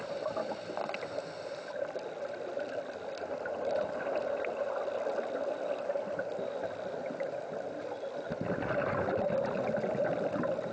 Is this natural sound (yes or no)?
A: yes